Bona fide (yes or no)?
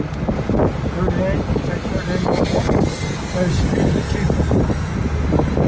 yes